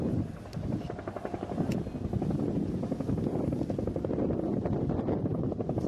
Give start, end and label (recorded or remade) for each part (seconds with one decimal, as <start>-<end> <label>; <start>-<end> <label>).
0.0-5.3 recorded; 5.3-5.9 remade